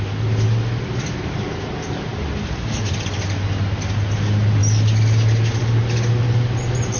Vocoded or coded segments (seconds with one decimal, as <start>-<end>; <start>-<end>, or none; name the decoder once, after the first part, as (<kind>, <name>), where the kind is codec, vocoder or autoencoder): none